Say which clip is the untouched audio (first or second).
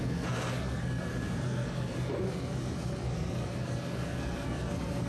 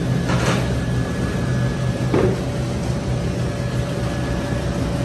second